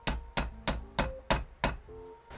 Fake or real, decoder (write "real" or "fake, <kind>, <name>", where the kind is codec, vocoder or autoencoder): real